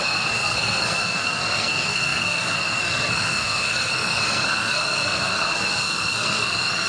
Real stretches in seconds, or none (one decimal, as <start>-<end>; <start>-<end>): none